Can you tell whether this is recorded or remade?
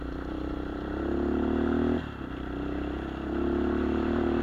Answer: recorded